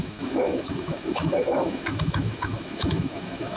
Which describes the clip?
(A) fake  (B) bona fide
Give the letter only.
A